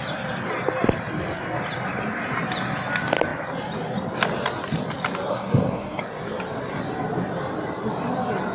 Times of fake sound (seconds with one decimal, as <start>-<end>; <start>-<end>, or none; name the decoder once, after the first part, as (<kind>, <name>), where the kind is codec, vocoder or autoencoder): 5.3-6.0 (codec, SNAC)